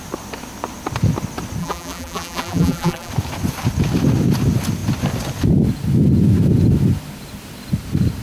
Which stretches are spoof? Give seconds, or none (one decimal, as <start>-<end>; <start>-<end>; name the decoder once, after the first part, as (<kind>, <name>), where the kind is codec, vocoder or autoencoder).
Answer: 1.6-3.1 (vocoder, BigVGAN v2)